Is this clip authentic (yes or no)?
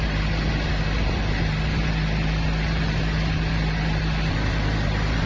yes